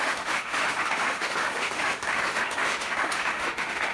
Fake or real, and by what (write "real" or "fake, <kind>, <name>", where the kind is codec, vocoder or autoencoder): fake, autoencoder, DAC-VAE